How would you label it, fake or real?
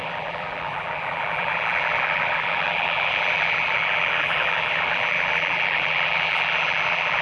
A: fake